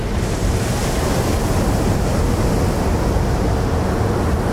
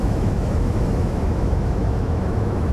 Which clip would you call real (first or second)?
first